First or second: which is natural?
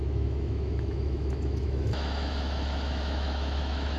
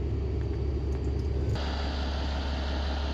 second